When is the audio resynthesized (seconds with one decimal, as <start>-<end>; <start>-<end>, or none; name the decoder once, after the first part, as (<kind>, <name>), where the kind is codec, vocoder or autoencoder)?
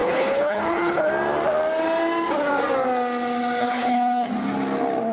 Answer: 0.0-1.1 (codec, HILCodec); 3.6-4.3